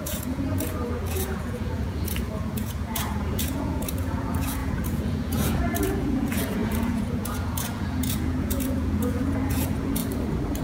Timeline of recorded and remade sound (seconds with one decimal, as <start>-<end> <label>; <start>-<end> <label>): 0.0-10.0 remade; 10.0-10.6 recorded